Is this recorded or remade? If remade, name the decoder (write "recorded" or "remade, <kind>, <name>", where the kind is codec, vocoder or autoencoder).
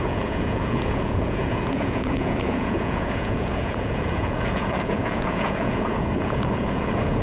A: remade, vocoder, Vocos